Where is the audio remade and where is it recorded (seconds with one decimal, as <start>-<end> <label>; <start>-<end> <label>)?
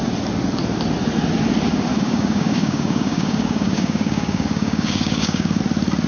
0.0-1.9 recorded; 1.9-5.6 remade; 5.6-6.1 recorded